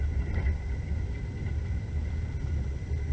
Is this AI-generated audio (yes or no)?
no